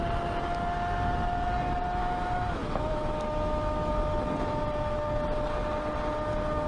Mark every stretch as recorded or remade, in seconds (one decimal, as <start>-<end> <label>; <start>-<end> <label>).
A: 0.0-2.0 recorded; 2.0-3.9 remade; 3.9-6.7 recorded